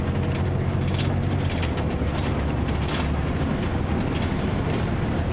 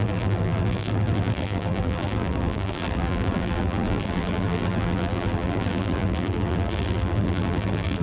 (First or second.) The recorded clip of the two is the first